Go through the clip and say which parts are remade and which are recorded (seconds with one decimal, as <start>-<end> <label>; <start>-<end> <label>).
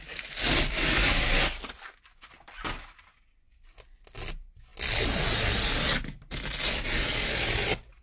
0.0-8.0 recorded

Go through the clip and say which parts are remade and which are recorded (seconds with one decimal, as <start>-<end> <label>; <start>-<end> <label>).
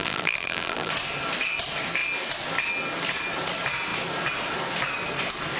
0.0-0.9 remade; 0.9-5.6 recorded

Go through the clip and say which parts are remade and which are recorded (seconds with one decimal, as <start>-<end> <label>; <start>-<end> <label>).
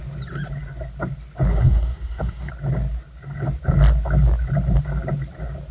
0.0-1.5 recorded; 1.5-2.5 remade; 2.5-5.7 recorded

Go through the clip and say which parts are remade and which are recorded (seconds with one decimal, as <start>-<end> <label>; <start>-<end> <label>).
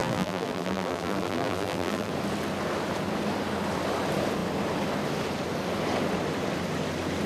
0.0-2.1 remade; 2.1-7.3 recorded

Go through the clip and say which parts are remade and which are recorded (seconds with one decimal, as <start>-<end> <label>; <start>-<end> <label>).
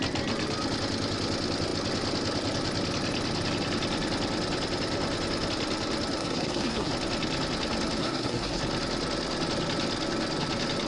0.0-6.2 recorded; 6.2-6.9 remade; 6.9-8.0 recorded; 8.0-8.6 remade; 8.6-10.9 recorded